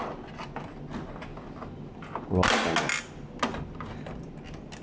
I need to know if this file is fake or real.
real